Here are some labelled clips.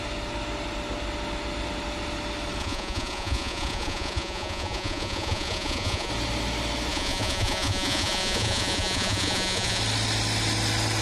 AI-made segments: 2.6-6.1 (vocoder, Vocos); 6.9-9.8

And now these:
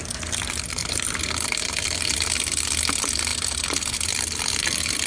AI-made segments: none

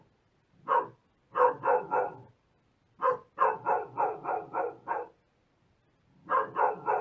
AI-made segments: none

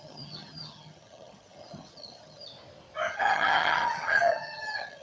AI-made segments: 0.0-2.5 (vocoder, HiFi-GAN); 3.1-5.0